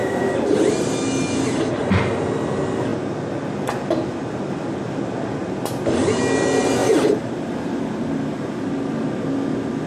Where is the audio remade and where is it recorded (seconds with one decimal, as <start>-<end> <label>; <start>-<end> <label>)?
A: 0.0-0.9 remade; 0.9-6.8 recorded; 6.8-8.7 remade; 8.7-9.9 recorded